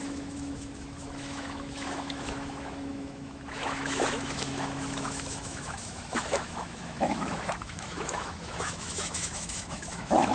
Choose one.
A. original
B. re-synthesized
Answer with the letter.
B